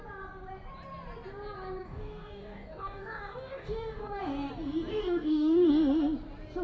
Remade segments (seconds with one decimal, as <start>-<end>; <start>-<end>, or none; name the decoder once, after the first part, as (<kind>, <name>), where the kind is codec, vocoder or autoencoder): 1.8-4.2 (codec, DAC); 4.9-5.7